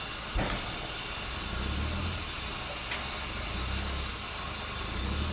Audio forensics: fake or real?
real